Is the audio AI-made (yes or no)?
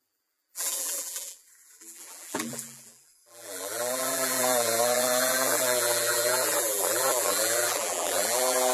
yes